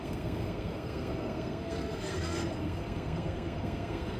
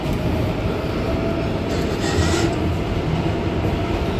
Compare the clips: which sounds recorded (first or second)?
second